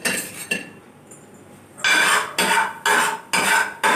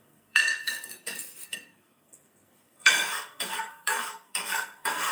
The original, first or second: first